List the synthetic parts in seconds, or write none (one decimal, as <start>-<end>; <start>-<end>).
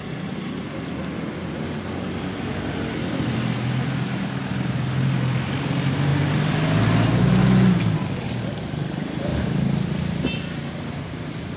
none